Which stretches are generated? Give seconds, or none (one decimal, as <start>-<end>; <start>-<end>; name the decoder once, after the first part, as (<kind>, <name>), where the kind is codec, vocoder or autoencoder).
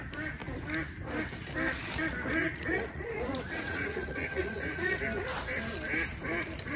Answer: 2.4-5.0 (vocoder, Vocos)